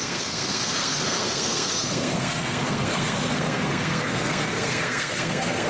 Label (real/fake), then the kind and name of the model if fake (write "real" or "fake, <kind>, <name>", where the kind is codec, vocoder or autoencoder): fake, codec, SNAC